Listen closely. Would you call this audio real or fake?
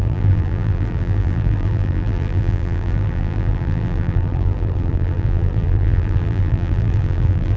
fake